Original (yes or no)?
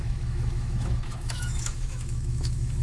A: no